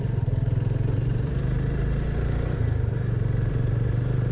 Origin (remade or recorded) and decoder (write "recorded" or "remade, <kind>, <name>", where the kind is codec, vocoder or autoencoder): remade, vocoder, BigVGAN v2